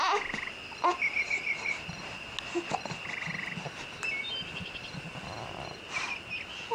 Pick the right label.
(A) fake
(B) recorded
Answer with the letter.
B